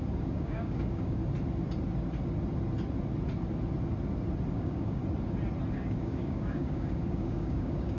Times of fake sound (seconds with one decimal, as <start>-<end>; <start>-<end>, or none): 0.0-1.2; 4.5-5.0; 5.7-8.0